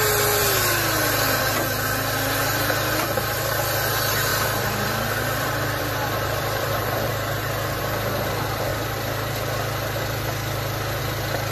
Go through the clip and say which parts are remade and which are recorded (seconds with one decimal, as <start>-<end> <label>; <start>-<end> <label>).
0.0-4.3 recorded; 4.3-7.8 remade; 7.8-11.5 recorded